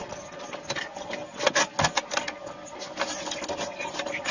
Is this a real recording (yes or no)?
yes